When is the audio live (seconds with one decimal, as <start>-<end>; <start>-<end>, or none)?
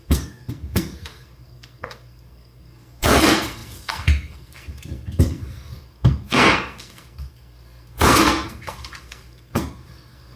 none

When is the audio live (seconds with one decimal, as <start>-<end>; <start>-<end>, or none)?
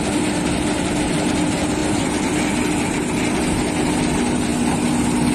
0.0-5.3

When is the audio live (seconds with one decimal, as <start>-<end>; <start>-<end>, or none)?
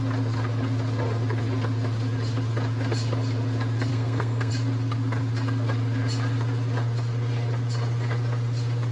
0.0-3.9; 4.5-8.9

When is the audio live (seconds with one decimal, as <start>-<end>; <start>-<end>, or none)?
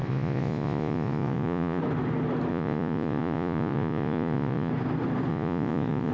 1.8-2.5; 4.7-5.3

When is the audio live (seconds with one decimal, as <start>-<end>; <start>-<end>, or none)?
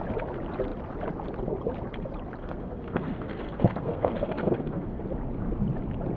0.0-2.4; 5.0-6.2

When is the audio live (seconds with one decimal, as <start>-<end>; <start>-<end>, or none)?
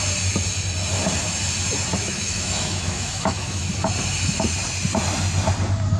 0.0-2.0; 3.6-6.0